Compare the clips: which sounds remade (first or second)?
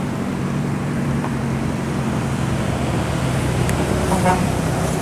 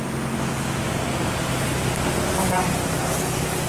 first